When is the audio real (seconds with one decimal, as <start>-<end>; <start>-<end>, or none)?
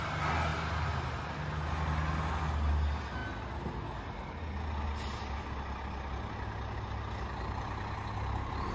0.0-8.7